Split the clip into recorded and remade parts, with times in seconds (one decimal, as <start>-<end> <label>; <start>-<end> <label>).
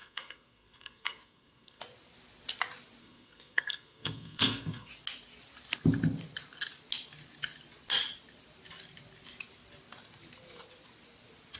0.0-1.8 remade; 1.8-3.0 recorded; 3.0-4.9 remade; 4.9-11.6 recorded